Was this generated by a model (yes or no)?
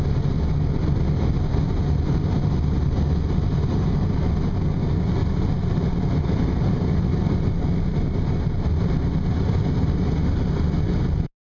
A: no